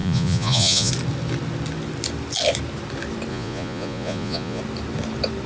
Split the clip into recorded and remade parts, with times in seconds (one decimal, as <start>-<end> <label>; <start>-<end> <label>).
0.0-0.9 remade; 0.9-3.3 recorded; 3.3-4.6 remade; 4.6-5.5 recorded